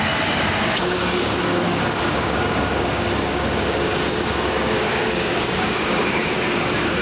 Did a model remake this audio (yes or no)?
yes